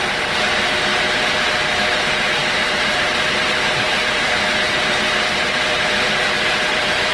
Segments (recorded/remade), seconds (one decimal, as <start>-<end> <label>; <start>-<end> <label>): 0.0-0.9 remade; 0.9-2.0 recorded; 2.0-7.1 remade